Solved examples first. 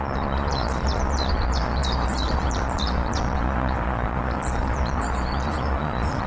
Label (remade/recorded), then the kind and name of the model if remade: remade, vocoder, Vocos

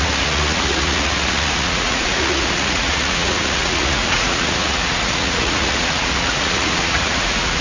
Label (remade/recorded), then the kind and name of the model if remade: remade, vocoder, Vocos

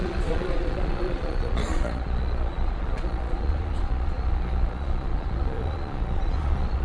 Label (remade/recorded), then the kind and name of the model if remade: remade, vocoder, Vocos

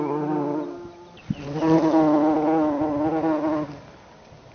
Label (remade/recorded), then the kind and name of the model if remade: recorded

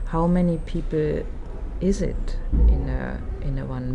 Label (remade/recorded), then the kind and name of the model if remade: recorded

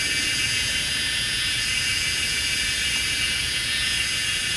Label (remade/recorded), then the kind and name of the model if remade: remade, vocoder, Vocos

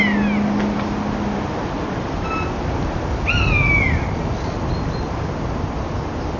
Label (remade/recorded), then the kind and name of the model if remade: recorded